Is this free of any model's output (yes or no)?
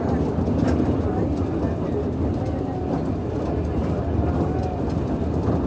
yes